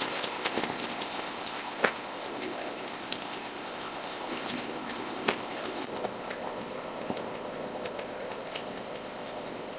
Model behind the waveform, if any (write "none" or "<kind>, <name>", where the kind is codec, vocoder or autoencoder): codec, ZipCodec